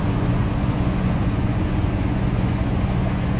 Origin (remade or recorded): remade